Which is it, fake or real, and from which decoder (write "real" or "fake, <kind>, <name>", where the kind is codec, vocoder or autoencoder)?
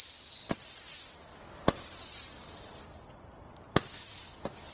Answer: real